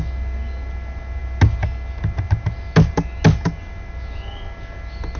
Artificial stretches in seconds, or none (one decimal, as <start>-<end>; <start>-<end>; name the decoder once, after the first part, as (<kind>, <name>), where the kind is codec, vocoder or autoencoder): none